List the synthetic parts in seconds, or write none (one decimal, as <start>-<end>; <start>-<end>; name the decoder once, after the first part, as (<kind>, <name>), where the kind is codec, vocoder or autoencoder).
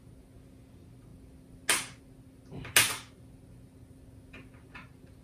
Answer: none